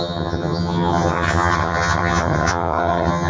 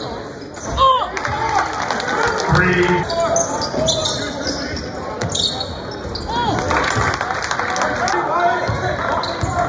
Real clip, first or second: second